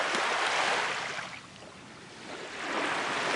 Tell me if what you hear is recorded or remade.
recorded